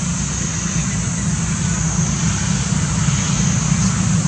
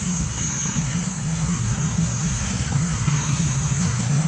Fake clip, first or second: second